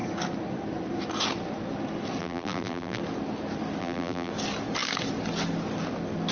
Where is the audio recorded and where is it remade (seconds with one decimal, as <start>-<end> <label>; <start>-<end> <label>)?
0.0-2.2 recorded; 2.2-3.0 remade; 3.0-3.8 recorded; 3.8-4.3 remade; 4.3-6.3 recorded